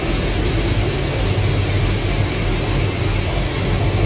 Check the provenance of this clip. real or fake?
real